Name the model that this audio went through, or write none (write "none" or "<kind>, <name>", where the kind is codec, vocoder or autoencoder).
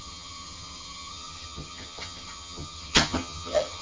vocoder, HiFi-GAN